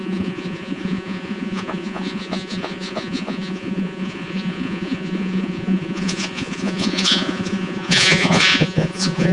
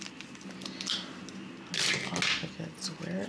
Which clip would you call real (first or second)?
second